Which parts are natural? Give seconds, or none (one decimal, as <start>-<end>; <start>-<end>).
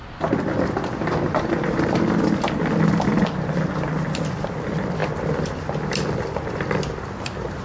0.0-7.6